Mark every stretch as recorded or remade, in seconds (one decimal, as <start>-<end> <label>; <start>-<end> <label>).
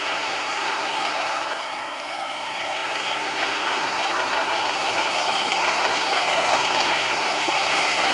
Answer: 0.0-8.1 remade